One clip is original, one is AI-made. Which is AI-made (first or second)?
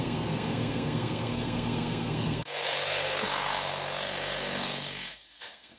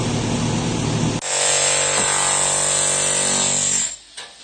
first